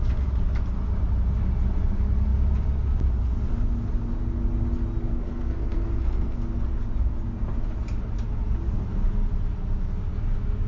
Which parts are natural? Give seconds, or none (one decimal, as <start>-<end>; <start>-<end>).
0.0-5.0; 6.4-10.7